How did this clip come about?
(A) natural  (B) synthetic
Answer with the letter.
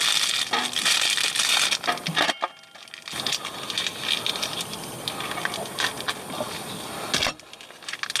A